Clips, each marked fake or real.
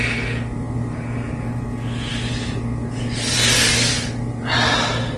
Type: real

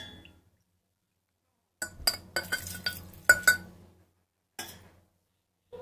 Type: real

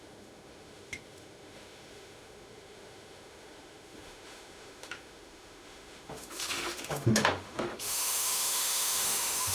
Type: fake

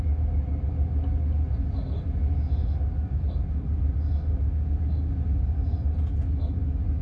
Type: real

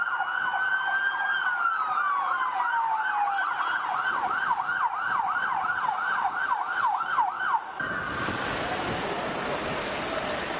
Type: real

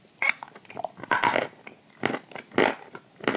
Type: real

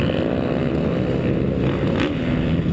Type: real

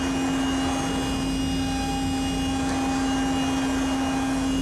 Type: real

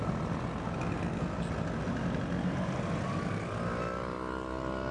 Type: real